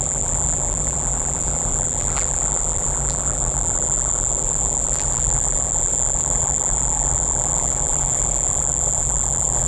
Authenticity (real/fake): fake